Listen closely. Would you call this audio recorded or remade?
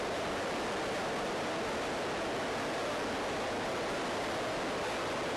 recorded